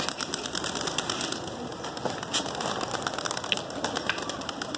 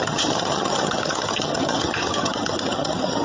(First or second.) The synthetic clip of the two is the second